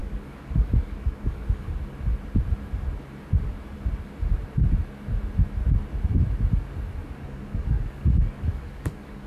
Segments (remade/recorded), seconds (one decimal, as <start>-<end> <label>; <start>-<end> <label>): 0.0-1.7 remade; 1.7-7.0 recorded; 7.0-9.3 remade